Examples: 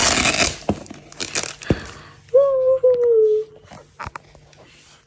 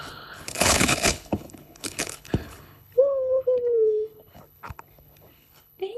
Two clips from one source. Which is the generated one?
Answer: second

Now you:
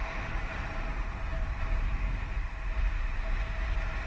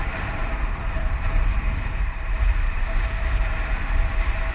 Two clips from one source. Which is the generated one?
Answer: second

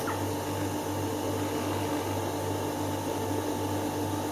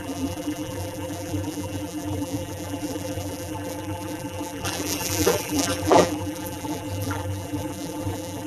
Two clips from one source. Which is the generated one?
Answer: second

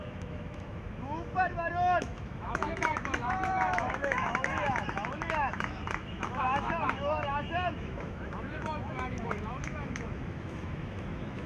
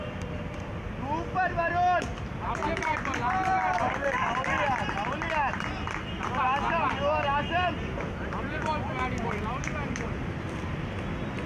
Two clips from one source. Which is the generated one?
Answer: first